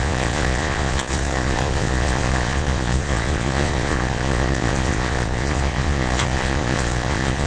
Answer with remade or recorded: remade